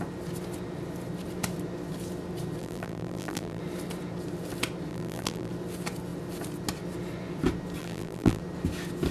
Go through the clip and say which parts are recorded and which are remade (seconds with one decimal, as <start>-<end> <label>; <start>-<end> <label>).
0.0-2.6 recorded; 2.6-3.6 remade; 3.6-4.9 recorded; 4.9-5.5 remade; 5.5-7.8 recorded; 7.8-8.4 remade; 8.4-9.1 recorded